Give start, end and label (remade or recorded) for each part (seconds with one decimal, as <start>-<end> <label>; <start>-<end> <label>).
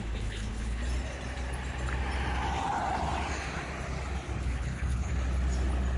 0.0-0.8 remade; 0.8-4.4 recorded; 4.4-5.1 remade; 5.1-6.0 recorded